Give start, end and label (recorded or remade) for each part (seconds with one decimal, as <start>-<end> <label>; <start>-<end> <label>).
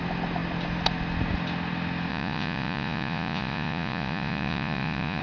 0.0-2.1 recorded; 2.1-5.2 remade